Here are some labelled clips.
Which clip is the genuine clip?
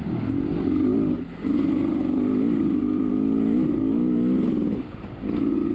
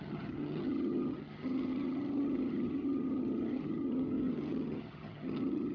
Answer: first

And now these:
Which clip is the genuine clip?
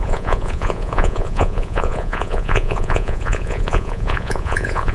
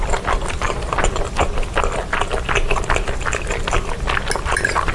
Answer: second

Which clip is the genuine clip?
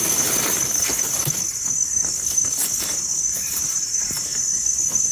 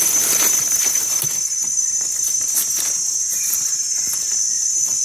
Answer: second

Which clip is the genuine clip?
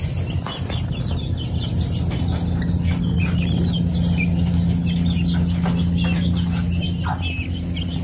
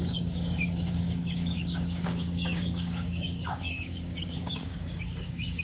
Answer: first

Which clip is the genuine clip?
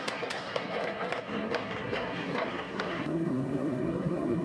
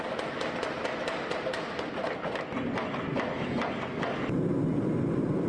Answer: second